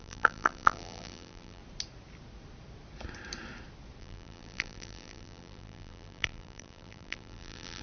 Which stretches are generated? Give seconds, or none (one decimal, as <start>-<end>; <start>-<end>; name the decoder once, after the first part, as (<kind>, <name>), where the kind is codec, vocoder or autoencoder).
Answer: 0.0-1.6 (vocoder, BigVGAN v2); 4.0-7.8